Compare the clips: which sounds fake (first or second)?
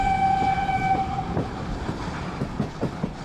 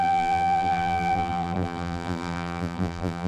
second